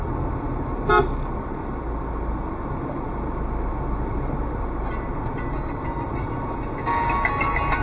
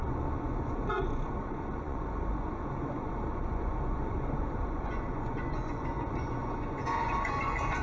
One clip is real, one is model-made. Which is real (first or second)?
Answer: first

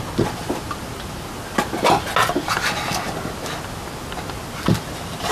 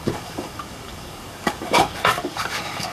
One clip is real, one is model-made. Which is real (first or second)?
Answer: first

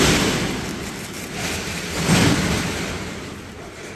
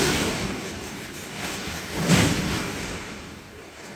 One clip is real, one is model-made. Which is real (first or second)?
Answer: first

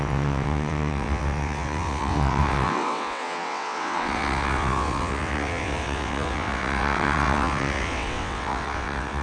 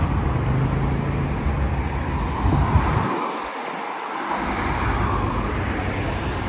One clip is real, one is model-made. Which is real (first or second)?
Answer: second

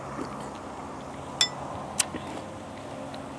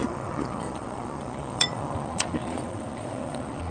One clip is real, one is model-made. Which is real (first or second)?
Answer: first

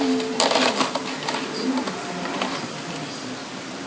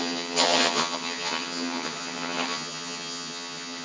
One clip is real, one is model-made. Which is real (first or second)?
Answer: first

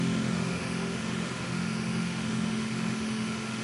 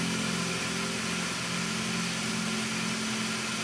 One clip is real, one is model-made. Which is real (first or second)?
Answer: second